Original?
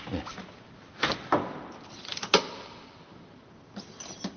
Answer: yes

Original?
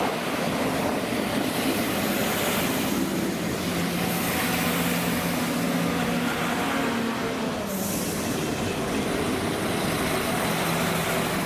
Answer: yes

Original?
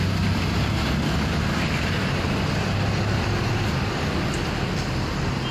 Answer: yes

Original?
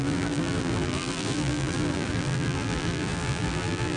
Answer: no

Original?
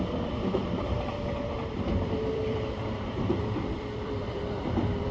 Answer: no